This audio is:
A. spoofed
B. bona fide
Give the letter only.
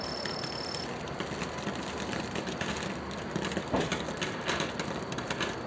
B